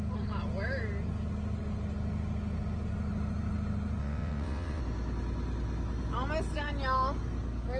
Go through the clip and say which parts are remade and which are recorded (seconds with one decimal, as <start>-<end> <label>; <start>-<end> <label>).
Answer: 0.0-4.0 recorded; 4.0-4.8 remade; 4.8-7.8 recorded